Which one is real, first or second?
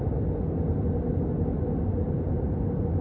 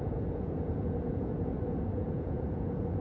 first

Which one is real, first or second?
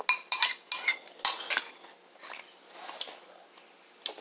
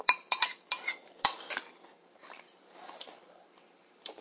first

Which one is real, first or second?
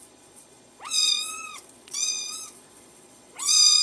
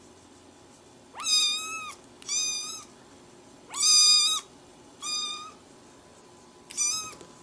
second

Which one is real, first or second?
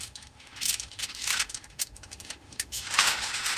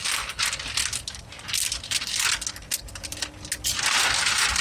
second